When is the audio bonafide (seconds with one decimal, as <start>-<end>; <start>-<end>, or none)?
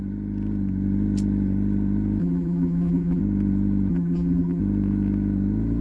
0.0-2.2; 3.2-3.9; 4.6-5.8